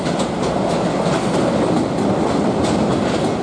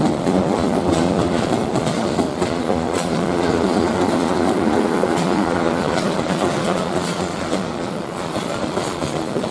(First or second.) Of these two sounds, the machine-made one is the second